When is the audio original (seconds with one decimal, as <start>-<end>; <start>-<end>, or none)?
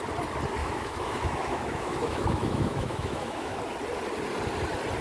0.0-0.6; 3.6-5.0